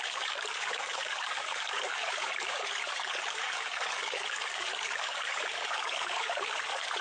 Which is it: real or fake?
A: fake